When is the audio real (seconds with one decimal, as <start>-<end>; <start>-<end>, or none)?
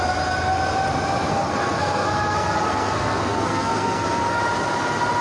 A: 0.0-1.3; 4.4-5.2